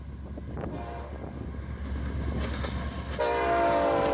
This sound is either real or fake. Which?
real